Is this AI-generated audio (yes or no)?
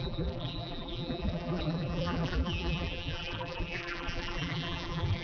yes